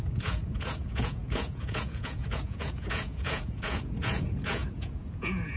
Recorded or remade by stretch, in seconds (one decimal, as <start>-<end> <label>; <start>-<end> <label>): 0.0-5.6 remade